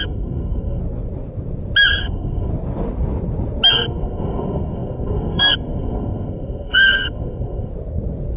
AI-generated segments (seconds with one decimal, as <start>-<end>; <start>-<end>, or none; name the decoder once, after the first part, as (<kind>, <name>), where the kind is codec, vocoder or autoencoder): 0.0-0.8 (codec, SNAC); 2.0-2.5; 3.7-7.7